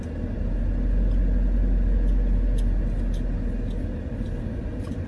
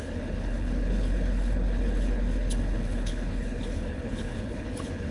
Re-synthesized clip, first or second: second